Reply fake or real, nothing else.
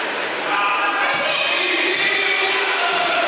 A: real